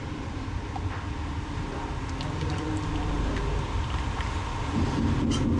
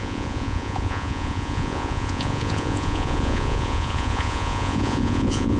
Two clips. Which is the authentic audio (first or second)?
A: first